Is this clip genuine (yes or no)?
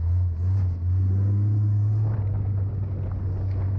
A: yes